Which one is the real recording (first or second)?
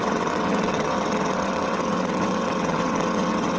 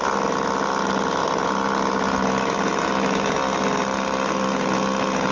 second